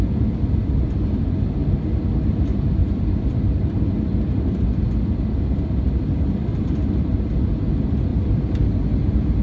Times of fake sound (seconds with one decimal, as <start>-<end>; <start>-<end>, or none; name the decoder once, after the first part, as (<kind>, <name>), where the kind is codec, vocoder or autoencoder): none